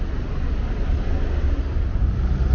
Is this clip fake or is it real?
real